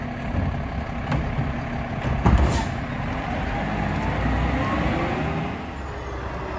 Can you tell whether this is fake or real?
real